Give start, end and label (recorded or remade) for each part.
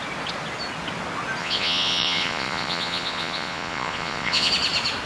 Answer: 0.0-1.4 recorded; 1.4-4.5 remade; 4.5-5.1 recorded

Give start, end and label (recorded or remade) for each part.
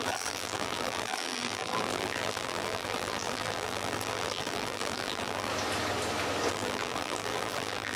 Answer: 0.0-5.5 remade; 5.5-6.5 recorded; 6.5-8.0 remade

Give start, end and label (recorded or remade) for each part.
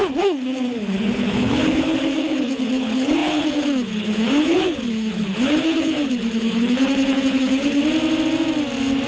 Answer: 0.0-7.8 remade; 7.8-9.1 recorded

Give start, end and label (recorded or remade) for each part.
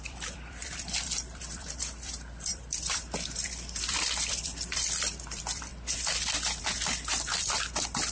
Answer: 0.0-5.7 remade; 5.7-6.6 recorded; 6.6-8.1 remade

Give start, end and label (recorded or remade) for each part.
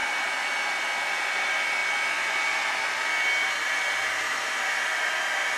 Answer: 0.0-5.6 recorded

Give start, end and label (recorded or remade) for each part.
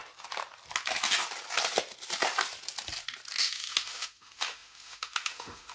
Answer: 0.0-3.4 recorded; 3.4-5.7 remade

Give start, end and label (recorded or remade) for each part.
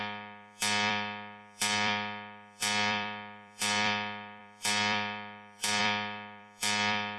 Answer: 0.0-7.2 remade